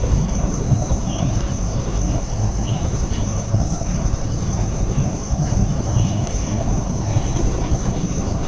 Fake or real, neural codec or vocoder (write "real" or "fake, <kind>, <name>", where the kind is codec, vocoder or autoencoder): fake, codec, SNAC